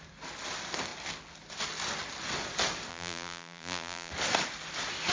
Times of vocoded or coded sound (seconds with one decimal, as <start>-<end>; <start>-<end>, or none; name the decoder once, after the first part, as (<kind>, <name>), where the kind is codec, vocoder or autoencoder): 2.9-4.1 (vocoder, BigVGAN v2)